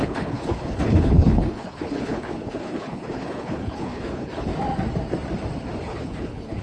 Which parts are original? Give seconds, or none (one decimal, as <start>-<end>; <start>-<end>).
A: 4.5-5.8